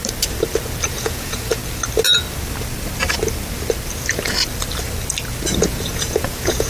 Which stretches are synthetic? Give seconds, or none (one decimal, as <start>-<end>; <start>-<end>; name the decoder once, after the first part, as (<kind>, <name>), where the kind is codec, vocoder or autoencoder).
0.9-1.6 (vocoder, Vocos); 5.6-6.7